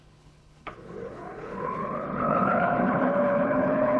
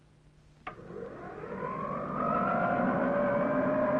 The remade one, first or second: first